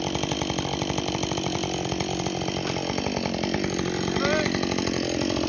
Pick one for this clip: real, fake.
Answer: real